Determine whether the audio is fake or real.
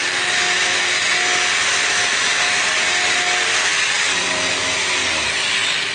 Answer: real